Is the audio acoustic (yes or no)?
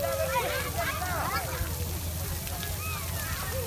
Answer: yes